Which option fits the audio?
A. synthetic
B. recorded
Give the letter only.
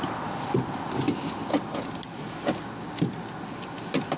B